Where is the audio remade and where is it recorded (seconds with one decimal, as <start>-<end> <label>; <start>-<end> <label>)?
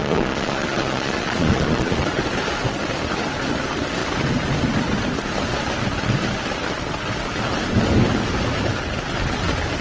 0.0-2.1 remade; 2.1-9.8 recorded